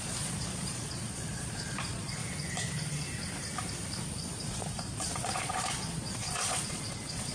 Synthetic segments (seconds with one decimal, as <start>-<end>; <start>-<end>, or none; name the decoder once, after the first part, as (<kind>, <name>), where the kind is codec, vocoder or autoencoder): 0.0-2.2 (vocoder, Vocos); 4.4-7.3